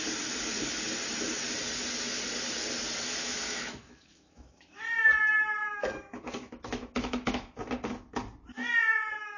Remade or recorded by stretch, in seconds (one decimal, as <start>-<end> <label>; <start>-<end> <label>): 0.0-3.2 recorded; 3.2-4.8 remade; 4.8-5.6 recorded; 5.6-7.6 remade; 7.6-9.4 recorded